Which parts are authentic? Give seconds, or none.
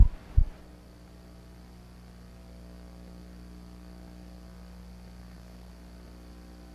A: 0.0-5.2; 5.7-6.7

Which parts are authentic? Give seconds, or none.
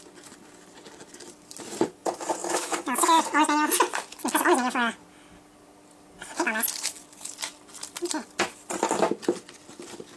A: 0.0-2.4; 3.2-10.2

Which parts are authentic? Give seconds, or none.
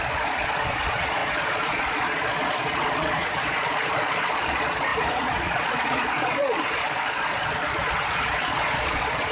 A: none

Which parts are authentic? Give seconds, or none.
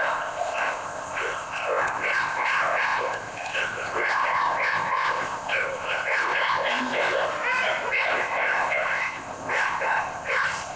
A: 7.3-7.9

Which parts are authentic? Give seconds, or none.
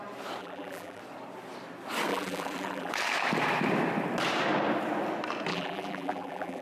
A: 0.0-0.4; 1.0-2.1; 2.9-5.5